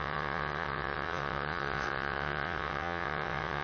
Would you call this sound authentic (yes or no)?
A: no